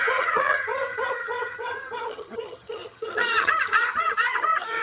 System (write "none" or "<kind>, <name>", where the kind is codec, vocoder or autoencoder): vocoder, HiFi-GAN